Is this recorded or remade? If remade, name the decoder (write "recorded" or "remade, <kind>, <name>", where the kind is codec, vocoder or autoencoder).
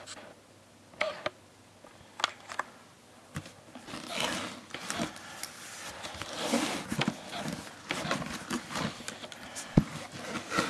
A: recorded